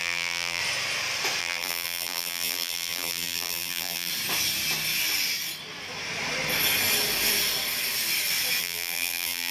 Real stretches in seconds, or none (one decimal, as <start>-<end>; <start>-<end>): 0.6-1.4; 4.1-8.6